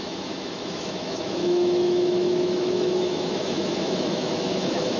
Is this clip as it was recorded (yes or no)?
no